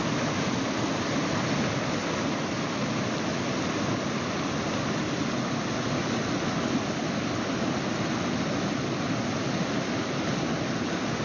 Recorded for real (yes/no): yes